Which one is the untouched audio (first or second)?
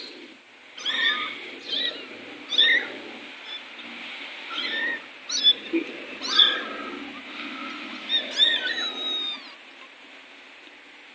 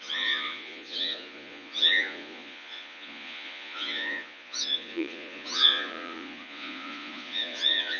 first